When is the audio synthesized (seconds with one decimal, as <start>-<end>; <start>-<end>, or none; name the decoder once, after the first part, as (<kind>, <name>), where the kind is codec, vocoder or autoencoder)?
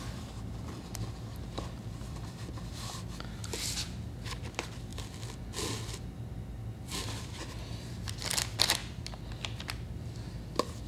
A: none